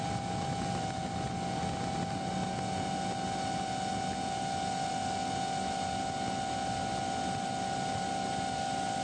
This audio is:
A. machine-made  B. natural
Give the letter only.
B